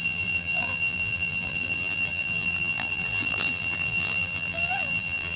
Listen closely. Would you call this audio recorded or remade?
remade